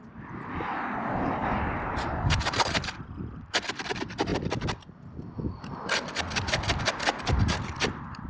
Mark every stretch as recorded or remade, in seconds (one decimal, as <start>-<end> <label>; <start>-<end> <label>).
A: 0.0-1.4 recorded; 1.4-3.0 remade; 3.0-8.3 recorded